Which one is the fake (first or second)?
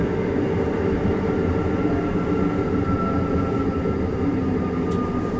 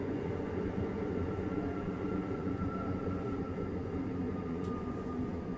second